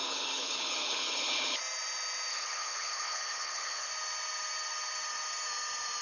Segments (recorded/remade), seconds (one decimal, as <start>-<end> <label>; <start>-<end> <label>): 0.0-1.6 remade; 1.6-2.3 recorded; 2.3-3.9 remade; 3.9-6.0 recorded